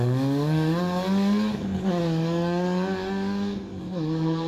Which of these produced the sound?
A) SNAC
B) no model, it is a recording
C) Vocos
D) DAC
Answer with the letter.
D